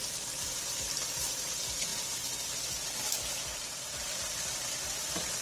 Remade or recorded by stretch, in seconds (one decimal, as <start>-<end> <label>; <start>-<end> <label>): 0.0-5.4 recorded